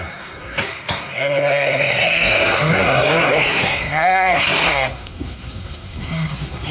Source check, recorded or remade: remade